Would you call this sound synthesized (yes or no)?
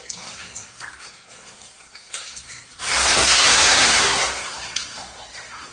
yes